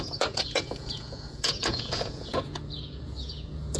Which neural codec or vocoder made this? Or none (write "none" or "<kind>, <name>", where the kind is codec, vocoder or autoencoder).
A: vocoder, Vocos